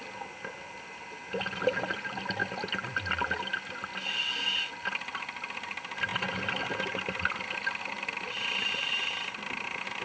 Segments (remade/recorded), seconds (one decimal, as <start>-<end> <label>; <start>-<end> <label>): 0.0-10.0 recorded